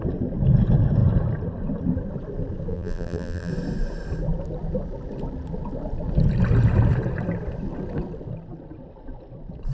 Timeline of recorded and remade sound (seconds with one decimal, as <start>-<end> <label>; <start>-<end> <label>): 0.0-2.7 recorded; 2.7-3.5 remade; 3.5-9.7 recorded

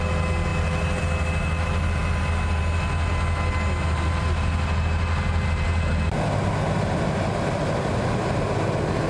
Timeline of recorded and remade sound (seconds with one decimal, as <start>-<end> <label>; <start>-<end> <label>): 0.0-9.1 recorded

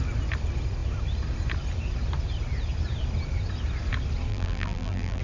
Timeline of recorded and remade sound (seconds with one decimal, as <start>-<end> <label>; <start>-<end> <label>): 0.0-4.3 recorded; 4.3-5.2 remade

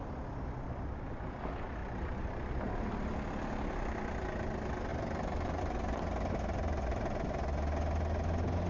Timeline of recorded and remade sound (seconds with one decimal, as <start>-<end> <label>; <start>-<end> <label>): 0.0-1.8 recorded; 1.8-2.3 remade; 2.3-8.7 recorded

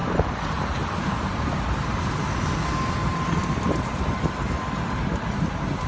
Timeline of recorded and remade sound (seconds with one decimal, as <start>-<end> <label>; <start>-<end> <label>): 0.0-2.0 remade; 2.0-3.0 recorded; 3.0-4.0 remade; 4.0-5.9 recorded